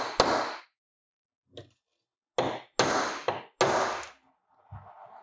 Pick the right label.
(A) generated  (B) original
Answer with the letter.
B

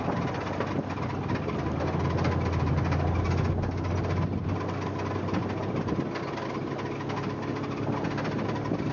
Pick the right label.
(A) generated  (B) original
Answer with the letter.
B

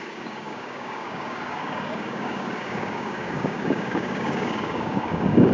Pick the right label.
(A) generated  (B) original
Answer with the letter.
A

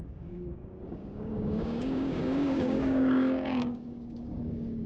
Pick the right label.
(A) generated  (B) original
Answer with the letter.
A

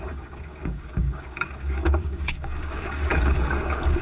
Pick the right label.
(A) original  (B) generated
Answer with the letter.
B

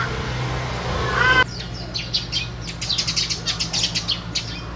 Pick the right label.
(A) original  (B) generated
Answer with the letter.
A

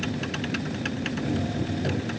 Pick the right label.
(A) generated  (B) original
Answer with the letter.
B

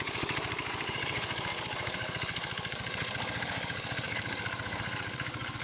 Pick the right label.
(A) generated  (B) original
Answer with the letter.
A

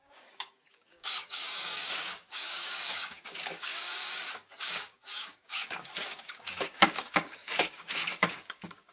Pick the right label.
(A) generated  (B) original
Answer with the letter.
A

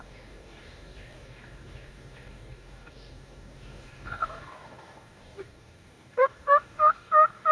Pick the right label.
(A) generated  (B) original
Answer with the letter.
A